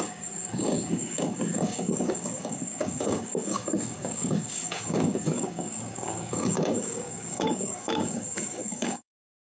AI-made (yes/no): yes